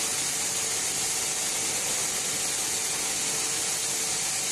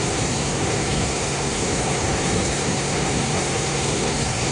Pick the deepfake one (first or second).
second